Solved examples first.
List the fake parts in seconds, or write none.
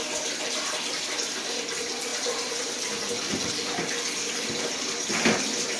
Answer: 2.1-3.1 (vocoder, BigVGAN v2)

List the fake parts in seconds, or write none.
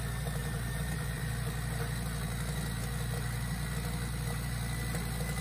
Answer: 0.4-1.3 (vocoder, BigVGAN v2)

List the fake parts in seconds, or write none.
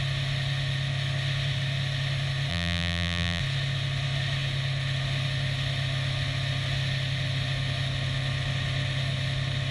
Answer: 2.5-3.4 (vocoder, BigVGAN v2)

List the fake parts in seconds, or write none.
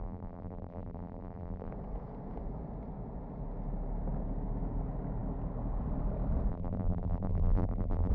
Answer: 0.0-1.7 (vocoder, BigVGAN v2); 6.5-8.1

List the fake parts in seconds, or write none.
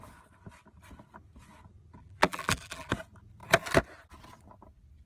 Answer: 2.0-2.9 (vocoder, BigVGAN v2)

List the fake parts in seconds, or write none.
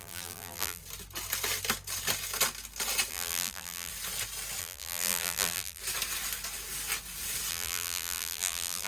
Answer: 0.0-0.8 (vocoder, BigVGAN v2); 3.1-3.9; 4.6-5.8; 7.5-8.9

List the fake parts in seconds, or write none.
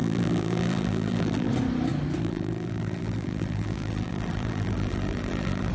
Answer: 0.0-1.5 (vocoder, BigVGAN v2); 2.2-5.7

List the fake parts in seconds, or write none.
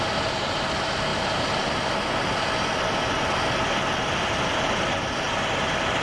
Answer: 0.0-6.0 (vocoder, BigVGAN v2)